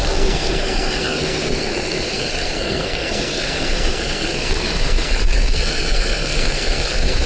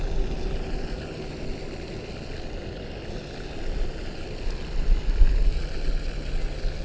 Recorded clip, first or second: second